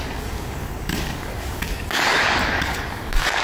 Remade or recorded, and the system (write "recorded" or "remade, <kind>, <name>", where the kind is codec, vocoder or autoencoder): remade, codec, DAC